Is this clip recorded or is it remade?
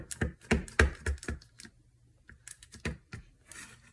recorded